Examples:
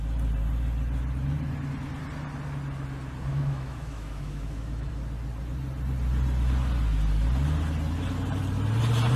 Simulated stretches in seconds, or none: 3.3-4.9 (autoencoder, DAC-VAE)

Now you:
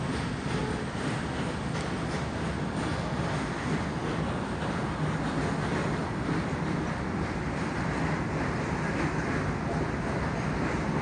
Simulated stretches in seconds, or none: none

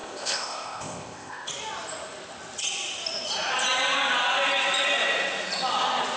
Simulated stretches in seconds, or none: 0.0-1.5 (codec, ZipCodec)

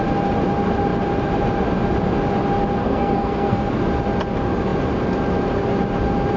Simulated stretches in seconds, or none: 2.8-3.7 (codec, SNAC)

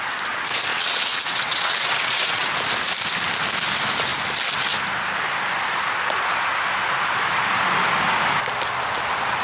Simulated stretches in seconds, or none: 0.7-2.5 (vocoder, WaveNeXt)

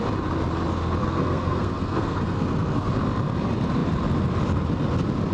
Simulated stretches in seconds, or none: 1.0-2.9 (codec, SNAC)